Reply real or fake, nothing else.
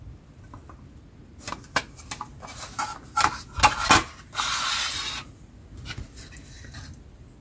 real